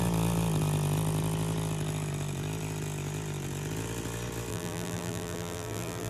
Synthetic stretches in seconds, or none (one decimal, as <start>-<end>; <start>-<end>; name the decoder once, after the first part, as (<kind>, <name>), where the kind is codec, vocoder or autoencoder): 4.5-6.1 (vocoder, BigVGAN v2)